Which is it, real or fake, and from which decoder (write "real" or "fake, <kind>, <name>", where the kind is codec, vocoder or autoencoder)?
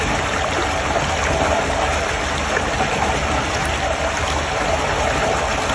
real